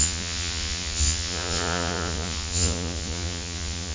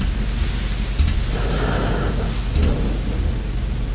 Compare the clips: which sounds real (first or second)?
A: second